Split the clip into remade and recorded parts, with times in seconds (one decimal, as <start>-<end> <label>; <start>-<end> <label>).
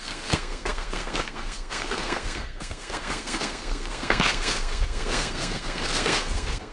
0.0-6.7 remade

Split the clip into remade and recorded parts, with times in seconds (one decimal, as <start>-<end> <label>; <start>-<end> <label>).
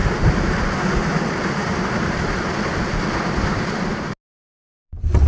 0.0-0.6 remade; 0.6-5.3 recorded